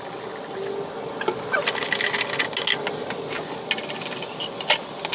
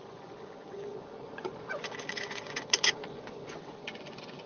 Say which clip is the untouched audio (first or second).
first